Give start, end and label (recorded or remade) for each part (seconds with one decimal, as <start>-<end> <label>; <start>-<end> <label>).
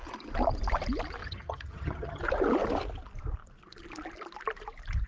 0.0-1.2 recorded; 1.2-2.2 remade; 2.2-5.1 recorded